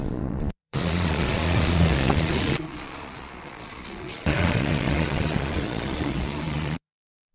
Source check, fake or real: fake